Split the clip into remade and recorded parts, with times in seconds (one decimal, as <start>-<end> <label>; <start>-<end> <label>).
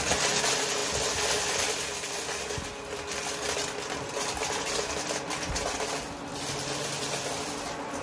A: 0.0-8.0 recorded